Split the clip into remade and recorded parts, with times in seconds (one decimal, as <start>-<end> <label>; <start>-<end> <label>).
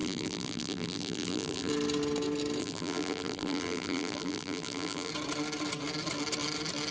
0.0-1.7 remade; 1.7-2.6 recorded; 2.6-5.1 remade; 5.1-6.9 recorded